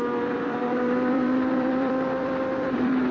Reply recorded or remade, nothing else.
remade